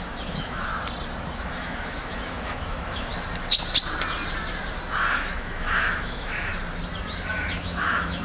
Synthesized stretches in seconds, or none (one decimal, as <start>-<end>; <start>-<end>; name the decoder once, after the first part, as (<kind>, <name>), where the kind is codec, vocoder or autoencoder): 0.0-0.7 (autoencoder, DAC-VAE); 1.3-3.1; 5.1-6.5; 7.3-8.2